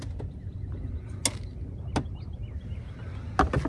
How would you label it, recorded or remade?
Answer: recorded